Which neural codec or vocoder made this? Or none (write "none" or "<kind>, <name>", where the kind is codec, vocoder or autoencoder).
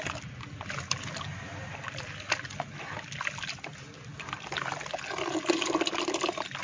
none